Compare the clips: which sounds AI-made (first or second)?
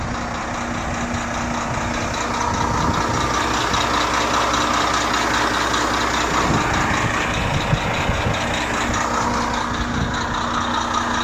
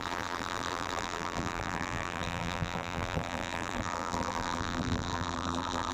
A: second